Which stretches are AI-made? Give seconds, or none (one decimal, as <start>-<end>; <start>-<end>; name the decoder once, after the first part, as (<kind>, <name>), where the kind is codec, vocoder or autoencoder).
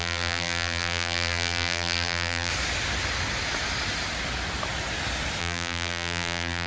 0.0-2.5 (vocoder, BigVGAN v2); 5.4-6.7